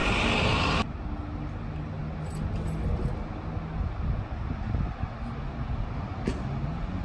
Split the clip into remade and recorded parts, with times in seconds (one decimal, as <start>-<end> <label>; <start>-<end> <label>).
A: 0.0-7.0 recorded